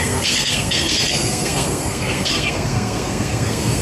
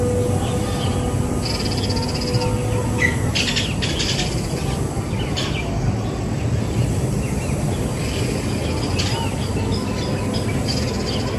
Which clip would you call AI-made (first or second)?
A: first